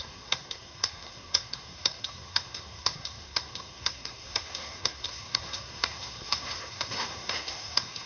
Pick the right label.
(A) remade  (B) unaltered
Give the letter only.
A